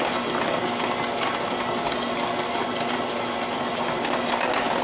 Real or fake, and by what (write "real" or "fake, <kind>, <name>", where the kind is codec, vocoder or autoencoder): real